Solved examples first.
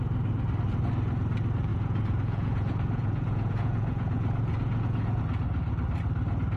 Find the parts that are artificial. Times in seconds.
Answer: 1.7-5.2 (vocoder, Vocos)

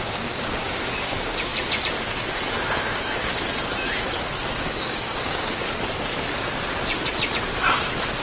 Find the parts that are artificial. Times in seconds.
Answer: 0.0-1.5 (codec, DAC); 2.7-3.3; 4.6-5.6